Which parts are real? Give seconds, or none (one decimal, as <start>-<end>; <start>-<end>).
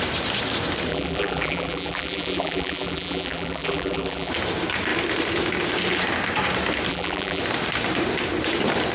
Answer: 0.0-0.9; 4.3-6.9; 7.4-8.9